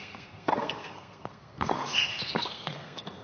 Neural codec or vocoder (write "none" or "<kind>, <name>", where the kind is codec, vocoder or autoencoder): codec, SNAC